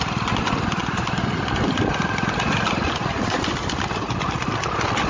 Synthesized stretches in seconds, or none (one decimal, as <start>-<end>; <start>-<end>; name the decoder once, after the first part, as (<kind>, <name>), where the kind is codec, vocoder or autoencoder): none